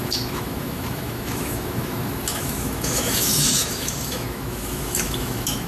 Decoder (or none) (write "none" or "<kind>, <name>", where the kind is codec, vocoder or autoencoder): autoencoder, DAC-VAE